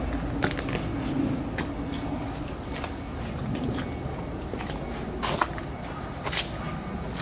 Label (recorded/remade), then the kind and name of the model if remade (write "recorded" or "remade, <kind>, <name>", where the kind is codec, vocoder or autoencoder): recorded